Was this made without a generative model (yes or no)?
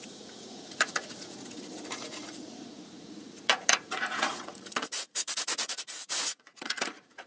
no